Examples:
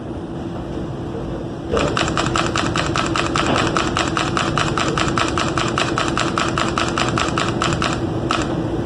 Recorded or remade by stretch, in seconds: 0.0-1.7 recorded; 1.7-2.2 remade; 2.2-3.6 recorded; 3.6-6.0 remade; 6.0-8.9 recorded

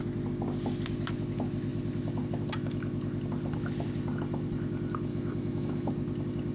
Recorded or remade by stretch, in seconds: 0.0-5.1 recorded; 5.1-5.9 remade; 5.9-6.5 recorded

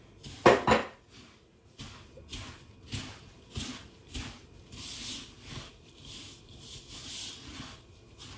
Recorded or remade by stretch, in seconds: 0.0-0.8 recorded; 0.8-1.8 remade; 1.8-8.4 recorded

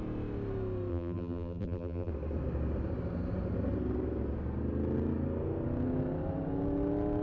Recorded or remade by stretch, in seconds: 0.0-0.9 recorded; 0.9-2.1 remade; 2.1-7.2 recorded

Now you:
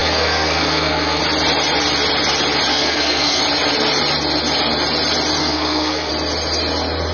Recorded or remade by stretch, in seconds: 0.0-1.2 remade; 1.2-2.7 recorded; 2.7-3.4 remade; 3.4-5.4 recorded; 5.4-6.1 remade; 6.1-7.1 recorded

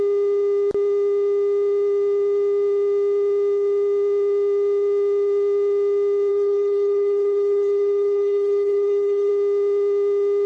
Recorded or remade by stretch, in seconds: 0.0-6.3 recorded; 6.3-9.3 remade; 9.3-10.5 recorded

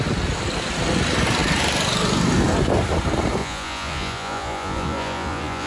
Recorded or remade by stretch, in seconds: 0.0-3.4 recorded; 3.4-5.7 remade